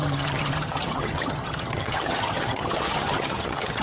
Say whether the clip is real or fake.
fake